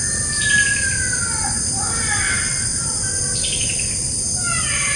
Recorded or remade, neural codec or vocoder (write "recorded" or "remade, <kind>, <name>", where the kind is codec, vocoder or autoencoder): recorded